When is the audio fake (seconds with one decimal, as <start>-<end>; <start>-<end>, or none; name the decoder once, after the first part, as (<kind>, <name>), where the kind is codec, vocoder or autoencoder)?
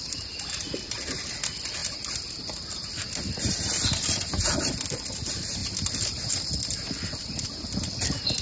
none